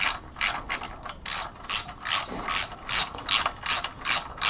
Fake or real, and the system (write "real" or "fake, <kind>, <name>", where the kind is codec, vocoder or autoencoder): real